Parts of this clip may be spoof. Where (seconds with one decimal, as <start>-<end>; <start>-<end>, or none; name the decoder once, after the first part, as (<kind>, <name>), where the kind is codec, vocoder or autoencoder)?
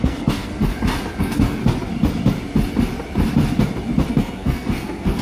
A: 0.0-0.5 (codec, SNAC); 1.2-1.6; 4.1-5.2